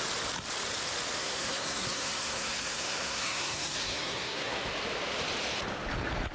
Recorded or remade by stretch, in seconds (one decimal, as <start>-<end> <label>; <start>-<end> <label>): 0.0-1.2 recorded; 1.2-4.6 remade; 4.6-6.3 recorded